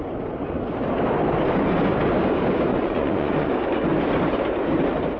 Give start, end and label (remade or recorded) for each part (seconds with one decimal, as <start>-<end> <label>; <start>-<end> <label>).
0.0-2.7 recorded; 2.7-3.6 remade; 3.6-5.2 recorded

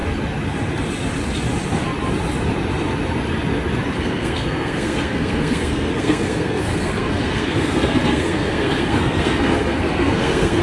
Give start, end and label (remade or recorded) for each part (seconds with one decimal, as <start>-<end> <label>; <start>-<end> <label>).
0.0-4.0 recorded; 4.0-10.6 remade

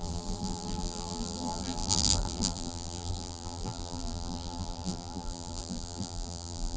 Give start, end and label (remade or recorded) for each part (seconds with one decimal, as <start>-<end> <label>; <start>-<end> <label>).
0.0-6.8 remade

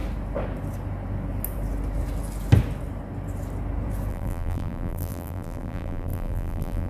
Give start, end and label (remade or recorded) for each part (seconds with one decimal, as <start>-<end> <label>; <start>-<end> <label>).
0.0-4.1 recorded; 4.1-6.9 remade